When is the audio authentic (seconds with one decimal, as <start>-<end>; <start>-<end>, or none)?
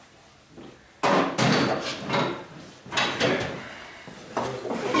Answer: 0.0-5.0